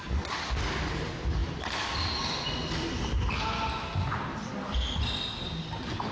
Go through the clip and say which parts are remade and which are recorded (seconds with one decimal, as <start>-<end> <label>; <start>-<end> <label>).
0.0-6.1 recorded